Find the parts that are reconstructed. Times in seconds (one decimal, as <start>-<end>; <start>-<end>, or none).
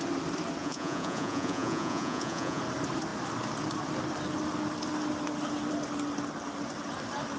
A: 0.6-2.6